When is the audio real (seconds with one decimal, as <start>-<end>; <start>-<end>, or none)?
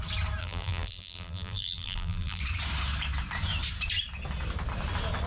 0.0-0.4; 2.4-5.3